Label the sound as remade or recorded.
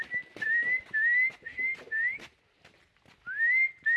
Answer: recorded